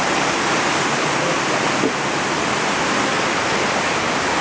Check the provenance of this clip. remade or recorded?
recorded